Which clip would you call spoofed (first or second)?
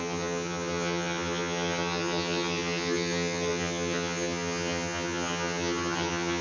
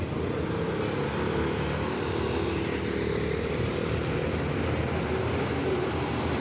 first